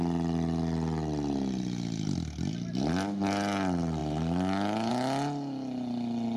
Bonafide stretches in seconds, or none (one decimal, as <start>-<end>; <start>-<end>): 0.0-6.4

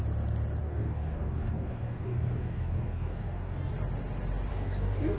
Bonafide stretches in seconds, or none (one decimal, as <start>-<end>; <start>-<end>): 0.0-0.6; 3.7-4.5

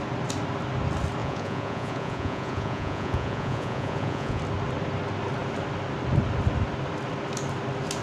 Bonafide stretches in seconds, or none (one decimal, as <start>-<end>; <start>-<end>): 0.0-1.2; 4.4-8.0

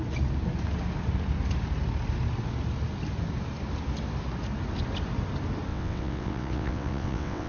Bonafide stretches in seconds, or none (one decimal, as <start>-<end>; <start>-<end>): 0.0-5.7

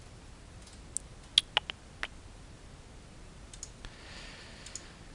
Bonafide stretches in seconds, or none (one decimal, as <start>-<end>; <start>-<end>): 0.0-5.1